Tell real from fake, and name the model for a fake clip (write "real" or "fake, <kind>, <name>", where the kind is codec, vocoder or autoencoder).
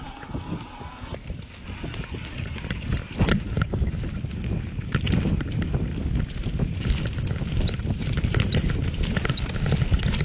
real